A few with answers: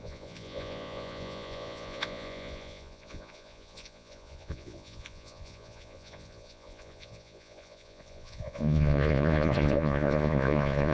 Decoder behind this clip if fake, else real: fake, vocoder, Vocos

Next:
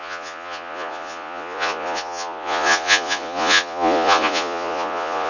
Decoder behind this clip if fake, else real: fake, vocoder, Vocos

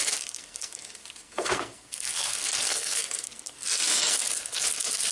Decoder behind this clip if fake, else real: fake, codec, SNAC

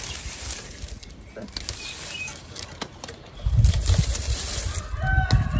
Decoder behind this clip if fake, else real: real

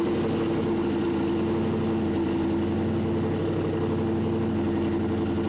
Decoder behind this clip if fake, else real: real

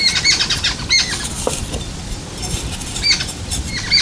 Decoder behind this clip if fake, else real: real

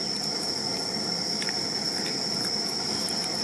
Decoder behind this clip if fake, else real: real